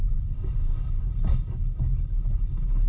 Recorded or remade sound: remade